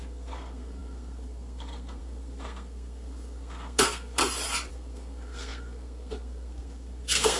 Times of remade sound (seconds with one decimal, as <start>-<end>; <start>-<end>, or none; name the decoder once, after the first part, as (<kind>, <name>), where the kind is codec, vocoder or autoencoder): 0.0-4.2 (codec, SNAC); 4.7-7.4